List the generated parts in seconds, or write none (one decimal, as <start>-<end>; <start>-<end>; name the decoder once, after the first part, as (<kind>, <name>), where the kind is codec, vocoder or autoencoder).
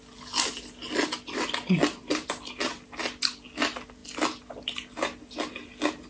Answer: 1.8-3.0 (vocoder, BigVGAN v2)